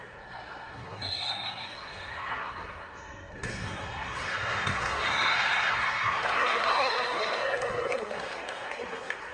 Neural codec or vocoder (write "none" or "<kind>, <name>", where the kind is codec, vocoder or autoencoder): codec, SNAC